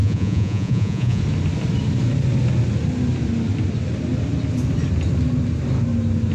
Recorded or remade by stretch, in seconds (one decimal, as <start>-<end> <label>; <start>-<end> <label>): 0.0-1.2 remade; 1.2-6.3 recorded